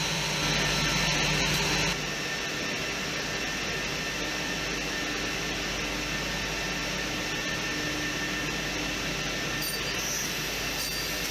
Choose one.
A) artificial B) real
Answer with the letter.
B